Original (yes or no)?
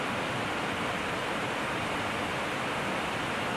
yes